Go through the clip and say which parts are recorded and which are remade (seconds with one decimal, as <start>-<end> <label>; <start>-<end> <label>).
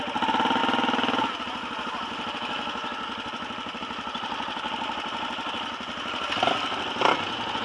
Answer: 0.0-7.6 recorded